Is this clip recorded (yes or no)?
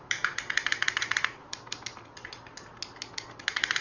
yes